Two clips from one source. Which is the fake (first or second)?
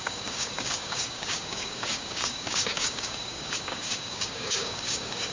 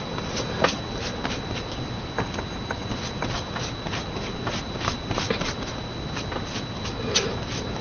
first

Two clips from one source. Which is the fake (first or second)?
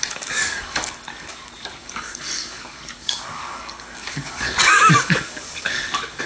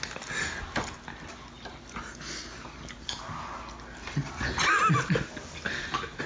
first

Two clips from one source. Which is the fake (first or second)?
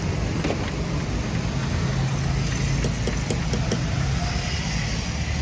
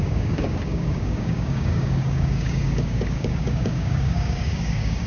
second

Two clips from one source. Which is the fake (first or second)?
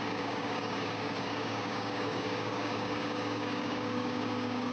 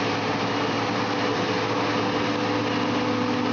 first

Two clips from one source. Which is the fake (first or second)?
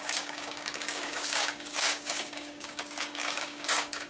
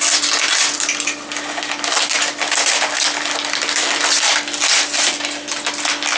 first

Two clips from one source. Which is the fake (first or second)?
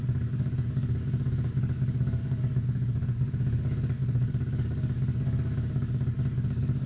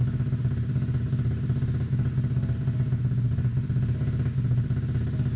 first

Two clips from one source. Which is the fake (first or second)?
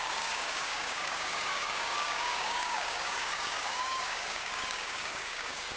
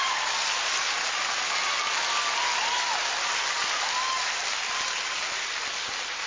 first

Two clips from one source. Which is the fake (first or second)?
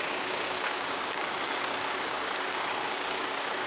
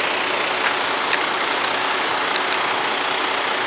first